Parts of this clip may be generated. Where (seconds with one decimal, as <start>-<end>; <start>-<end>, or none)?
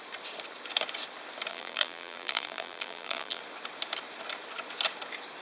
1.5-3.4